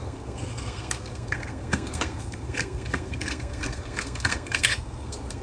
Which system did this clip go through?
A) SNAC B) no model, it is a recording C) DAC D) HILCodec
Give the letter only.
A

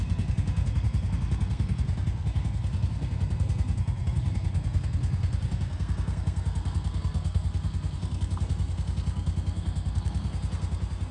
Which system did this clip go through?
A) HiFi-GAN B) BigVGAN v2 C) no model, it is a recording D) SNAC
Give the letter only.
D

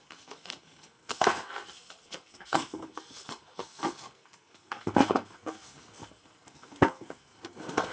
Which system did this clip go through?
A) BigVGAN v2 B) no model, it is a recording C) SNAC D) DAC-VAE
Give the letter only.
C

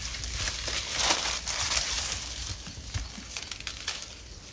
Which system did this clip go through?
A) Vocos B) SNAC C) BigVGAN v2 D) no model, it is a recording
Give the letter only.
D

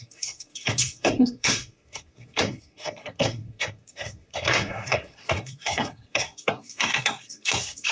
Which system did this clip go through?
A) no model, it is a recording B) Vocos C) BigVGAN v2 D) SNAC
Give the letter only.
D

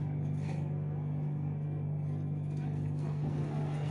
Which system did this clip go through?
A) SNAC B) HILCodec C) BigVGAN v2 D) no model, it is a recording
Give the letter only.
A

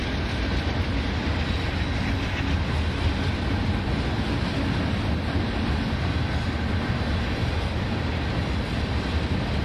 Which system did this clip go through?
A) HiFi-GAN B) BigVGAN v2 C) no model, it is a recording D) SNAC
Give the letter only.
C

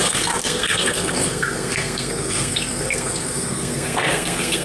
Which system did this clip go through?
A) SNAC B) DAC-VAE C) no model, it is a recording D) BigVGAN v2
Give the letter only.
A